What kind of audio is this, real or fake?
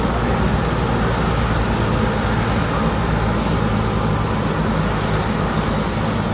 real